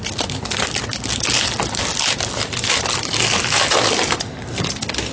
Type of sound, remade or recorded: recorded